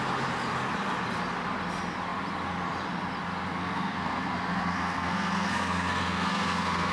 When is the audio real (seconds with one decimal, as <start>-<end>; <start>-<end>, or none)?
0.0-3.6